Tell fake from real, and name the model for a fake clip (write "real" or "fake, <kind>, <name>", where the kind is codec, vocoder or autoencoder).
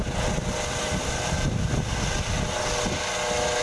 real